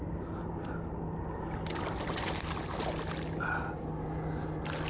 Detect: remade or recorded recorded